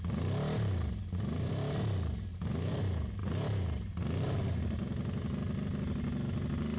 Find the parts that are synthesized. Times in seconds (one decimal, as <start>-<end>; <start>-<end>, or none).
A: none